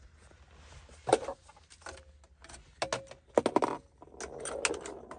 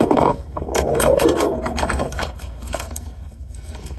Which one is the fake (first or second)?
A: second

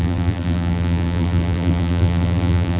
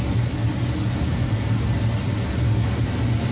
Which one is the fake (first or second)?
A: first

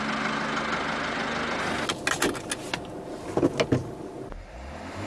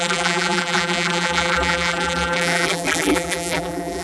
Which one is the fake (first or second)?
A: second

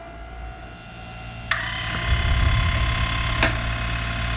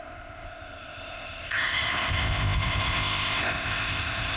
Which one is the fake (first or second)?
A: second